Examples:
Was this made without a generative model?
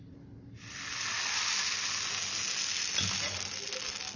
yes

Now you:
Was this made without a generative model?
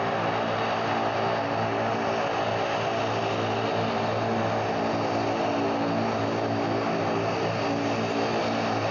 yes